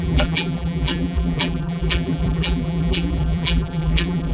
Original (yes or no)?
no